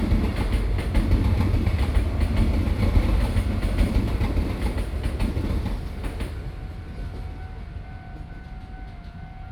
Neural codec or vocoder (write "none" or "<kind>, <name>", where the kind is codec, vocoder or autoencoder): none